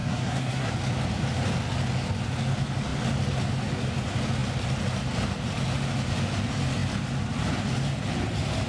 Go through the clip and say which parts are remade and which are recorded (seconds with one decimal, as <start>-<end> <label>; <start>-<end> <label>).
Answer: 0.0-0.7 remade; 0.7-8.7 recorded